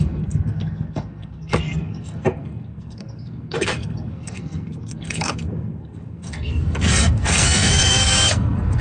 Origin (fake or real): fake